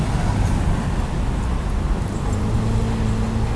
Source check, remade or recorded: recorded